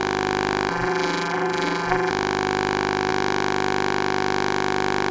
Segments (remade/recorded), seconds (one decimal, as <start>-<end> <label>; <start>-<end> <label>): 0.0-0.7 recorded; 0.7-2.1 remade; 2.1-5.1 recorded